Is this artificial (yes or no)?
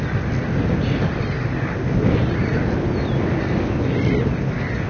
no